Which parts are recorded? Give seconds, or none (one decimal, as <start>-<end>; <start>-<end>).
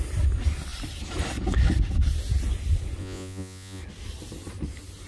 0.0-3.0; 3.8-5.1